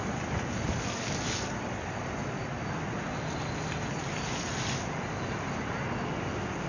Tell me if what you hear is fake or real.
real